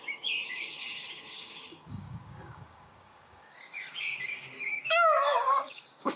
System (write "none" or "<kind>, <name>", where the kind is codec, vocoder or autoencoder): codec, DAC